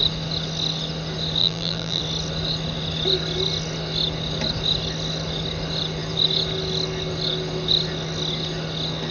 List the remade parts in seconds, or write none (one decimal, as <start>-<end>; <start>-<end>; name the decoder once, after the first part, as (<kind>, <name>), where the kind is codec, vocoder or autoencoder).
1.4-2.0 (vocoder, BigVGAN v2)